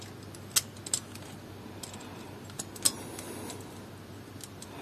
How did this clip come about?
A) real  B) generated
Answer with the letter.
A